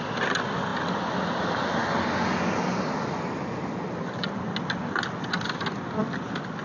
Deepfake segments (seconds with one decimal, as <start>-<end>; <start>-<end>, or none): none